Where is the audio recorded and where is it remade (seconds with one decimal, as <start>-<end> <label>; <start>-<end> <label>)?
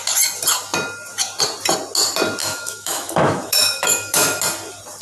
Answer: 0.0-2.4 recorded; 2.4-4.4 remade; 4.4-5.0 recorded